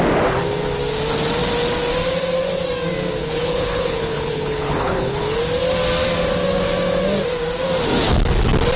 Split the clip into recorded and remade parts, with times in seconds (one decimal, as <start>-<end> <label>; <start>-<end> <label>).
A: 0.0-3.2 recorded; 3.2-5.4 remade; 5.4-8.8 recorded